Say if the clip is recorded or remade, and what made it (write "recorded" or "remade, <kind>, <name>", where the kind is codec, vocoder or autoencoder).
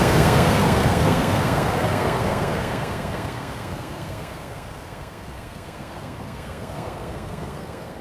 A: remade, codec, SNAC